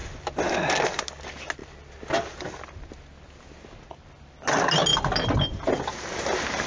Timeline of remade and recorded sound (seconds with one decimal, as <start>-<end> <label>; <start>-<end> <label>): 0.0-6.7 recorded

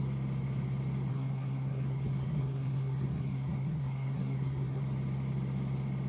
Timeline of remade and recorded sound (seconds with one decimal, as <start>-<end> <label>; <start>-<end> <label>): 0.0-1.1 recorded; 1.1-4.8 remade; 4.8-6.1 recorded

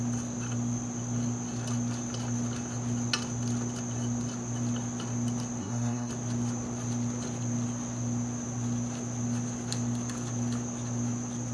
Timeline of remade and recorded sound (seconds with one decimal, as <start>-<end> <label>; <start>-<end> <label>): 0.0-5.6 recorded; 5.6-6.1 remade; 6.1-11.5 recorded